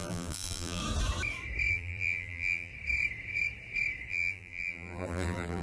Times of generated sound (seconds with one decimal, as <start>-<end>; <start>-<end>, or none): 0.0-0.8; 1.7-2.7; 4.1-5.6